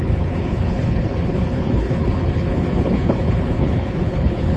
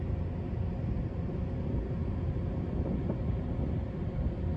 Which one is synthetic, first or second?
first